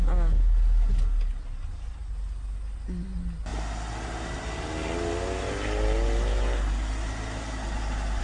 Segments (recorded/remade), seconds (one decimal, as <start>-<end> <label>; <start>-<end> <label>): 0.0-8.2 recorded